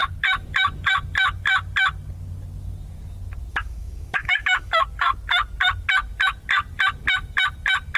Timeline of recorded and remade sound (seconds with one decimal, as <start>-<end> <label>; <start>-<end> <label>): 0.0-3.5 recorded; 3.5-4.8 remade; 4.8-8.0 recorded